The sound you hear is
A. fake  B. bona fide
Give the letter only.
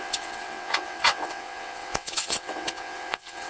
A